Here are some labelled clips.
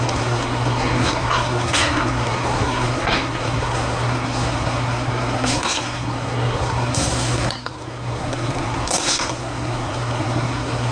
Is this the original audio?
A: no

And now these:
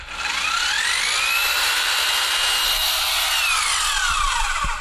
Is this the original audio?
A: yes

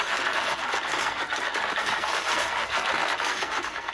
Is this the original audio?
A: no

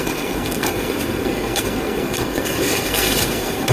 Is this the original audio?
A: no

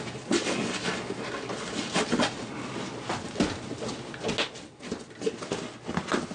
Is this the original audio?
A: yes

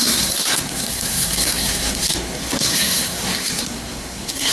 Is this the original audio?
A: no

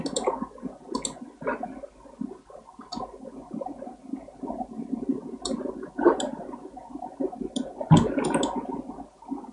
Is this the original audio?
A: yes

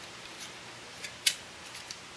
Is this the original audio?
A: yes